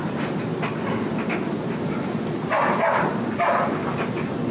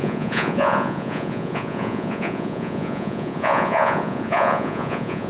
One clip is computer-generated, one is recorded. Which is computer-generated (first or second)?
second